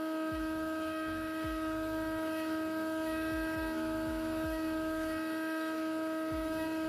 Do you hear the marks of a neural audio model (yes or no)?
yes